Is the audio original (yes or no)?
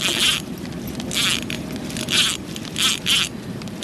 yes